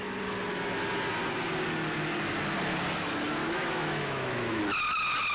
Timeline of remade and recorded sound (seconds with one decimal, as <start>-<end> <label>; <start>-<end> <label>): 0.0-3.4 recorded; 3.4-4.6 remade; 4.6-5.3 recorded

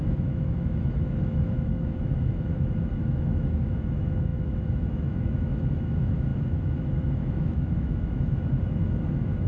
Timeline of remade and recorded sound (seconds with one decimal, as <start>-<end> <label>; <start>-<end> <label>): 0.0-9.5 remade

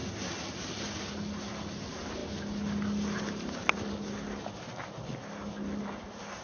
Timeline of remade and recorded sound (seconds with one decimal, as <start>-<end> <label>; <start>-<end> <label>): 0.0-6.4 recorded

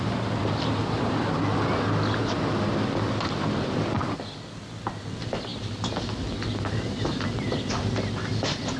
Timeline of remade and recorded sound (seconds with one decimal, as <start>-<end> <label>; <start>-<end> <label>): 0.0-8.8 recorded